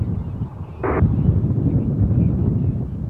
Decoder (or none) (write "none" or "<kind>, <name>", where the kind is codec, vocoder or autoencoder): none